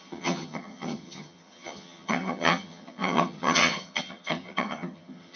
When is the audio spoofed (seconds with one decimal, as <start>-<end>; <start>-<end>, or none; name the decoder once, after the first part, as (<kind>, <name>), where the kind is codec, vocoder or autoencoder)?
0.0-5.4 (vocoder, HiFi-GAN)